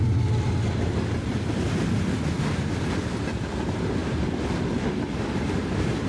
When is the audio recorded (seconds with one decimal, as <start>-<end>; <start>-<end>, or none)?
0.0-6.1